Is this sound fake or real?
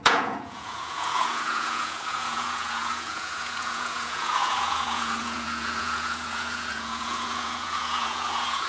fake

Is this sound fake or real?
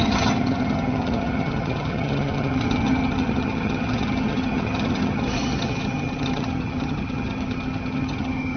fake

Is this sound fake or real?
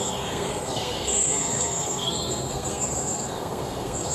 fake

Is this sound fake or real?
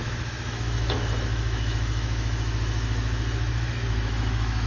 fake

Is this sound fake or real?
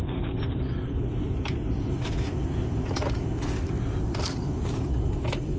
fake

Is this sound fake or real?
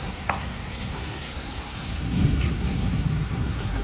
fake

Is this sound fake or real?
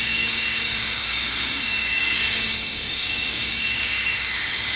fake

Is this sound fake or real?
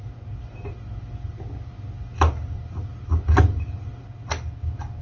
real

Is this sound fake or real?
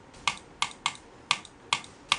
real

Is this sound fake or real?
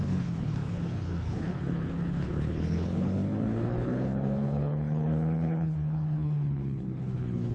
fake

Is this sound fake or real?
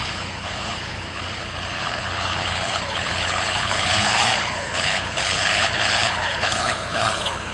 fake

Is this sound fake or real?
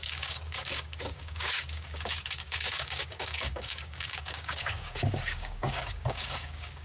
fake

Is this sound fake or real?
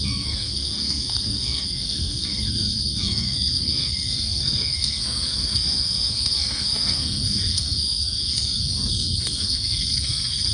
fake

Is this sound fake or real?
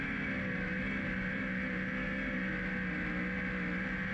real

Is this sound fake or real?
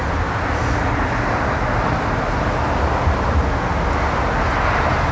real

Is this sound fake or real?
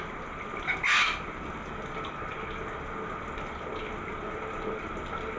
real